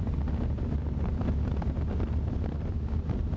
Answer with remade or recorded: recorded